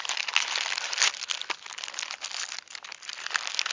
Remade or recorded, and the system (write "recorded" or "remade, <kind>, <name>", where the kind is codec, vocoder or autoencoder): recorded